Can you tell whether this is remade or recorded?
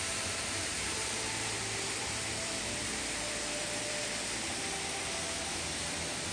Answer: remade